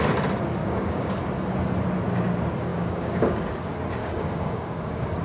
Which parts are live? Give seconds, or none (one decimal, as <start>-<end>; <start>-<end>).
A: 0.0-0.6; 1.2-2.7; 3.5-4.0

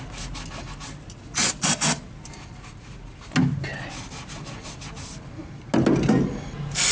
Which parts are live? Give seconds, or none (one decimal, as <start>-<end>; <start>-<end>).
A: 0.0-6.9